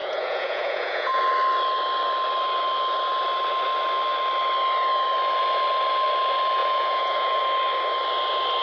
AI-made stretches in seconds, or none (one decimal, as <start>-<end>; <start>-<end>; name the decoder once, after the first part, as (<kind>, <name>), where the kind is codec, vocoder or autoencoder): 0.0-1.2 (vocoder, Vocos); 6.6-7.4